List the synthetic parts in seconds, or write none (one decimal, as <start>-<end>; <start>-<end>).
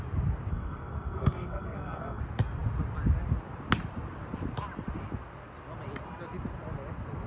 0.5-2.2